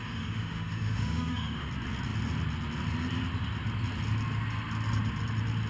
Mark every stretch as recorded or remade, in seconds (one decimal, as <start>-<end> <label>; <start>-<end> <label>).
0.0-1.7 remade; 1.7-5.7 recorded